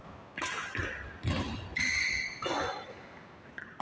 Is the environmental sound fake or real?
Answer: real